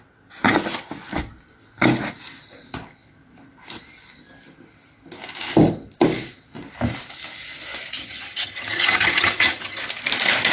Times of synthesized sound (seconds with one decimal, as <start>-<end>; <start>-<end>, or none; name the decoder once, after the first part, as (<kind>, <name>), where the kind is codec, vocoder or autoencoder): 8.0-9.8 (vocoder, HiFi-GAN)